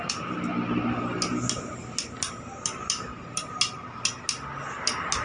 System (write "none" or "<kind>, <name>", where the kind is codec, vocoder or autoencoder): none